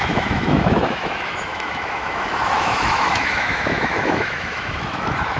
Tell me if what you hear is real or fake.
fake